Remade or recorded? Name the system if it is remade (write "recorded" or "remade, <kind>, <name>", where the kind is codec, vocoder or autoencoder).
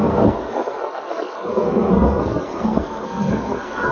remade, codec, SNAC